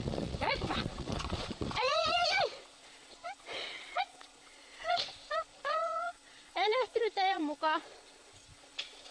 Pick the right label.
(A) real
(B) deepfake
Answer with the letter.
B